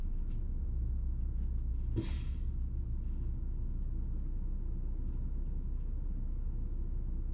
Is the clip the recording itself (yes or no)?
yes